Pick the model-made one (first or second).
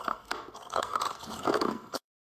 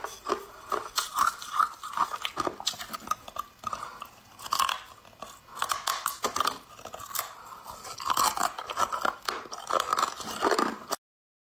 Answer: first